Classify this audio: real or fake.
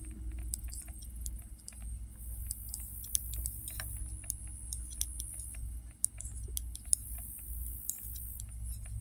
real